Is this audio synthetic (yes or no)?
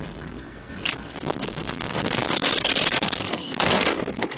yes